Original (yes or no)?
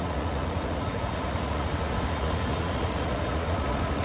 no